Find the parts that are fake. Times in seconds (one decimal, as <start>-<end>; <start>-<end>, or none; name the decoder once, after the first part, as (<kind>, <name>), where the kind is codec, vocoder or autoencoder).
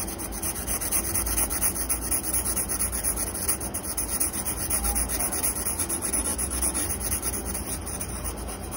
none